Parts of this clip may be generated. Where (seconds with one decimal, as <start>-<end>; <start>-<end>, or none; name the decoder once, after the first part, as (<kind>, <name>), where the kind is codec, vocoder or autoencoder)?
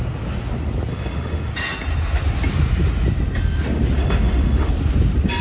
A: 0.9-1.5 (autoencoder, DAC-VAE); 4.0-4.7